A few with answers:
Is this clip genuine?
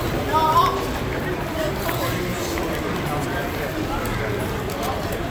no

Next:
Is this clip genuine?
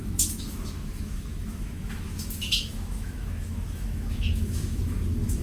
no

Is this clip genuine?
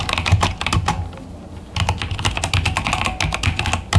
yes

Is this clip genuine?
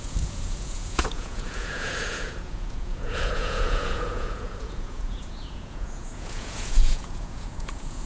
no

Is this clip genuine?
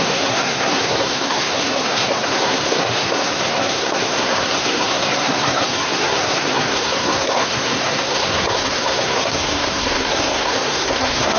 no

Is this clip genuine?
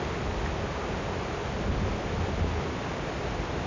yes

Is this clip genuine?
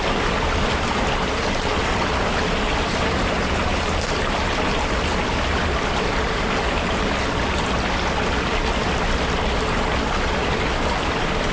yes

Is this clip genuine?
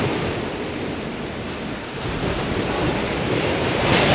yes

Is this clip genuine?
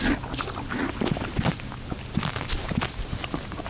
yes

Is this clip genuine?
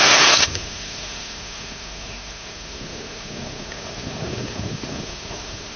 no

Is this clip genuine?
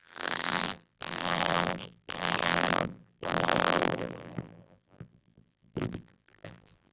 no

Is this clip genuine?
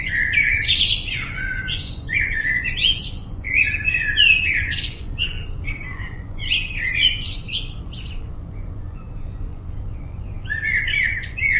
no